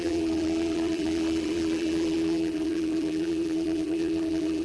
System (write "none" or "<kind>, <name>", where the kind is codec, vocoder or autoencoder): vocoder, BigVGAN v2